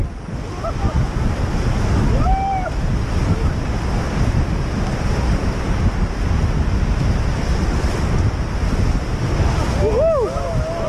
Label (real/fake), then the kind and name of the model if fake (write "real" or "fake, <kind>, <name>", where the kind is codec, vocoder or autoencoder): real